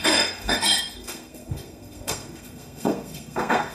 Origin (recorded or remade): remade